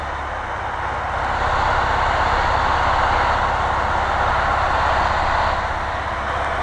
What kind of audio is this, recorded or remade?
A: recorded